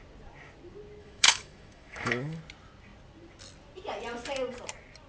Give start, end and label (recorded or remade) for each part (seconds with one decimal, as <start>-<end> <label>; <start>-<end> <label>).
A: 0.0-1.0 recorded; 1.0-2.4 remade; 2.4-5.1 recorded